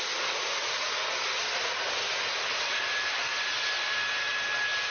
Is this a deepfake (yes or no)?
no